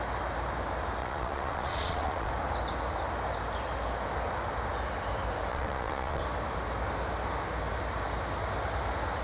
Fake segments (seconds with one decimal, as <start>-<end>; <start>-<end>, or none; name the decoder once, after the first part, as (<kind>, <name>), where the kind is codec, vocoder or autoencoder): 1.0-2.3 (vocoder, Vocos); 5.5-6.2